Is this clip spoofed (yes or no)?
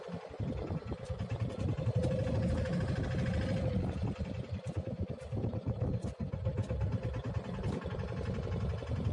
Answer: no